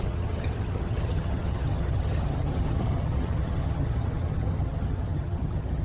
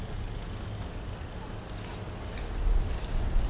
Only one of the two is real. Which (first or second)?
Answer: second